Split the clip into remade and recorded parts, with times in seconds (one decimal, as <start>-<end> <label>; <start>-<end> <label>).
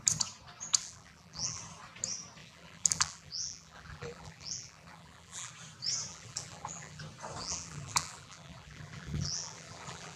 0.0-0.8 recorded; 0.8-1.6 remade; 1.6-2.4 recorded; 2.4-5.5 remade; 5.5-6.1 recorded; 6.1-7.0 remade; 7.0-7.4 recorded; 7.4-10.2 remade